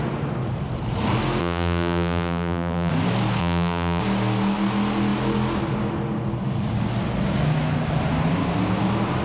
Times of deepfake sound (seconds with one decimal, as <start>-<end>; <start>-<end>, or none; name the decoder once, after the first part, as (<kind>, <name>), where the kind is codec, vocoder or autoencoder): 1.4-2.9 (vocoder, BigVGAN v2); 3.4-4.0